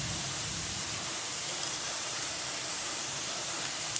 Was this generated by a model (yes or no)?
yes